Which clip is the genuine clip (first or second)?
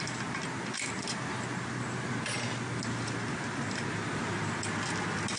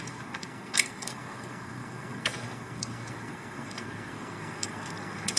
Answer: first